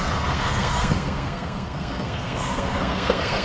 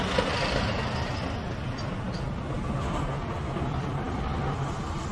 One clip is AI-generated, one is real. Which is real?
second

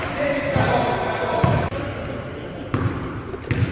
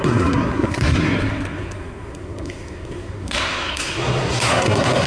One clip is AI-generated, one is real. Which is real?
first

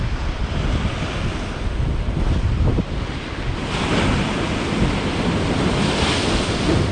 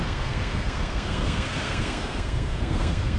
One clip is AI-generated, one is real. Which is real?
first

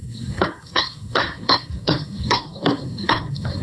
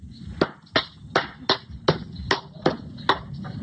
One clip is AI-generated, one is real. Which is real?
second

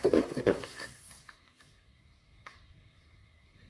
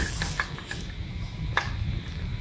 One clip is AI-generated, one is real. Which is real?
second